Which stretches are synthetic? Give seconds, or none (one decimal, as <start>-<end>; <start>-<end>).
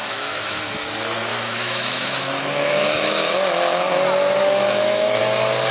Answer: 0.0-0.6; 1.3-3.9; 4.4-5.2